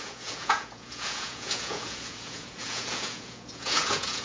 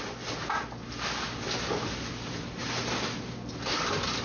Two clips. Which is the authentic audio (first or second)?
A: second